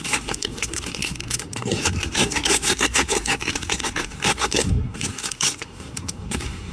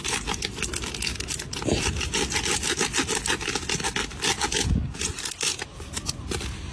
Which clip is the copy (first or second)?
first